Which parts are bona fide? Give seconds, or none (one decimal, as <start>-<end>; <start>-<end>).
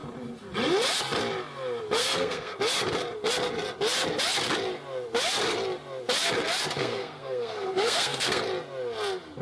0.0-2.0; 2.6-6.8; 8.4-9.4